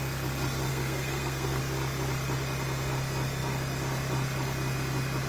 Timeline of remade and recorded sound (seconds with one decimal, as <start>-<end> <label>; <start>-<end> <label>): 0.0-0.7 recorded; 0.7-1.6 remade; 1.6-5.3 recorded